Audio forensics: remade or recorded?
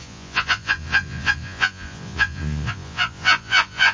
remade